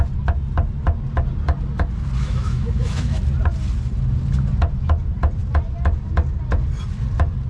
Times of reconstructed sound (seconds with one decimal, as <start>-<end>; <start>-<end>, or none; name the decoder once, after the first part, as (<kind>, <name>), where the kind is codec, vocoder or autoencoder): 2.2-3.2 (autoencoder, DAC-VAE)